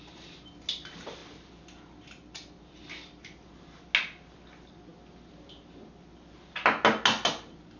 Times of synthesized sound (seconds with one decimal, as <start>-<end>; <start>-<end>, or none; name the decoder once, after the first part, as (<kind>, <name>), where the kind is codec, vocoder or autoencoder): none